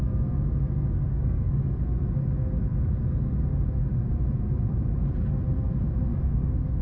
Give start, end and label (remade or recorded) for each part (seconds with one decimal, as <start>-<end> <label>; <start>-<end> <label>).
0.0-1.1 recorded; 1.1-1.8 remade; 1.8-6.1 recorded; 6.1-6.8 remade